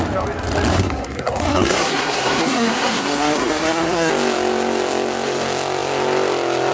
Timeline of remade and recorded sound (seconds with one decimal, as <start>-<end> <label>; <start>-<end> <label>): 0.0-0.7 recorded; 0.7-4.1 remade; 4.1-6.7 recorded